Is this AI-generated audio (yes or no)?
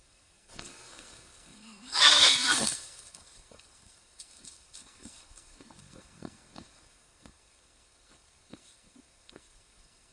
yes